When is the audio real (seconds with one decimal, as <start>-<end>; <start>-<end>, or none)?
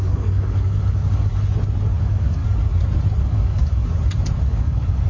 1.3-2.0; 2.4-3.2; 3.9-4.5